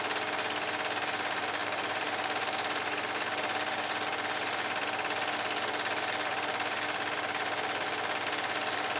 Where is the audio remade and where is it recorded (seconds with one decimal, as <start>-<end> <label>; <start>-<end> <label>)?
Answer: 0.0-1.6 recorded; 1.6-2.8 remade; 2.8-9.0 recorded